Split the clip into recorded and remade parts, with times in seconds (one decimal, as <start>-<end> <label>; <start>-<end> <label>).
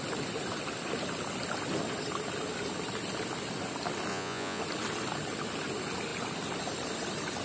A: 0.0-4.1 recorded; 4.1-4.6 remade; 4.6-7.4 recorded